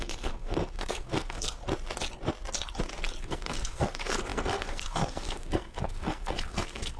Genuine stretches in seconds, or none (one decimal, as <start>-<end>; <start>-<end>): 1.6-3.2